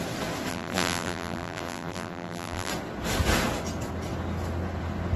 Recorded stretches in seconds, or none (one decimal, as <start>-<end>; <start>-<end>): 0.0-0.5; 2.7-5.2